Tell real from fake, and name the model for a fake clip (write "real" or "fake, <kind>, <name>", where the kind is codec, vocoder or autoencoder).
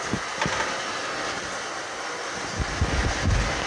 real